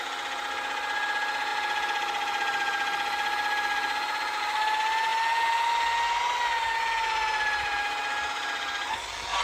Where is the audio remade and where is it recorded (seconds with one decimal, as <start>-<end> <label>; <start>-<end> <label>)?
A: 0.0-9.4 recorded

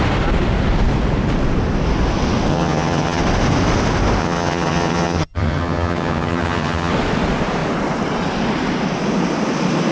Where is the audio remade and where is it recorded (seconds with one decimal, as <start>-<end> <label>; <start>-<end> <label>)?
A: 0.0-2.5 recorded; 2.5-3.2 remade; 3.2-4.2 recorded; 4.2-6.9 remade; 6.9-9.9 recorded

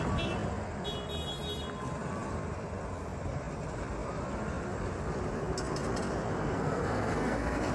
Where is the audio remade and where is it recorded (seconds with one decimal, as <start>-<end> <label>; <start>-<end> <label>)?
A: 0.0-6.4 recorded; 6.4-7.7 remade

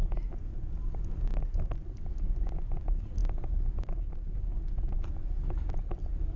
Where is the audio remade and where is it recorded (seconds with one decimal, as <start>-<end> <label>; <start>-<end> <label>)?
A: 0.0-6.4 recorded

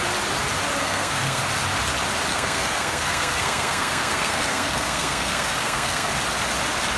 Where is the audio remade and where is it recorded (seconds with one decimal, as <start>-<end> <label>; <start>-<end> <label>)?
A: 0.0-0.8 recorded; 0.8-1.4 remade; 1.4-2.3 recorded; 2.3-6.1 remade; 6.1-7.0 recorded

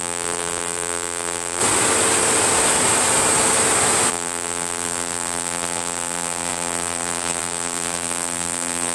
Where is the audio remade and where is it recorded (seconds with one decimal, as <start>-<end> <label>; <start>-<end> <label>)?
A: 0.0-1.6 remade; 1.6-4.1 recorded; 4.1-8.9 remade

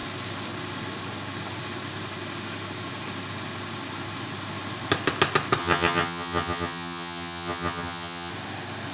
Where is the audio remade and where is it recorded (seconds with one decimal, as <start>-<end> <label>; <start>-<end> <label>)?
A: 0.0-5.6 recorded; 5.6-8.3 remade; 8.3-8.9 recorded